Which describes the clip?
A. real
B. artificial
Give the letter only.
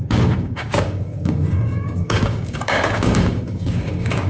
B